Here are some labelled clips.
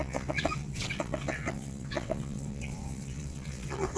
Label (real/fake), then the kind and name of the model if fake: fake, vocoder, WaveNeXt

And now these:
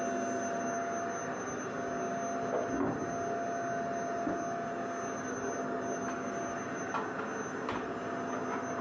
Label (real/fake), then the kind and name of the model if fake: real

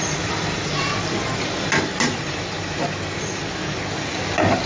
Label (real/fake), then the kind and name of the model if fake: real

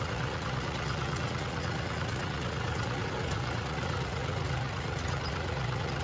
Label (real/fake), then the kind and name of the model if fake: fake, vocoder, Vocos